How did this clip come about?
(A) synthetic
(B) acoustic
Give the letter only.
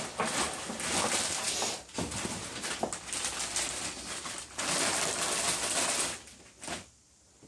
B